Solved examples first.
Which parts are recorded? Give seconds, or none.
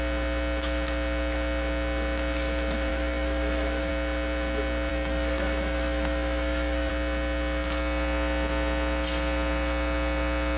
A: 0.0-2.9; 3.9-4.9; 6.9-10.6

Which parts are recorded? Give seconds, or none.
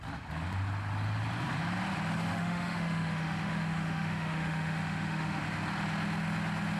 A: 0.0-2.3; 5.4-6.8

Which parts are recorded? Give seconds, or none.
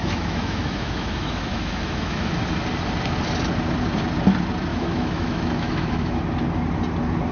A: 2.3-4.7; 6.2-7.3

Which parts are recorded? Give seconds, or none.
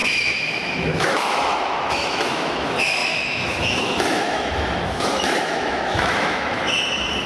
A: none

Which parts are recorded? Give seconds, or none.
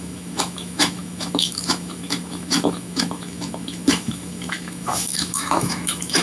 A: none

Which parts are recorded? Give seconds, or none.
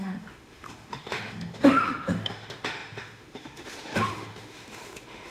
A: none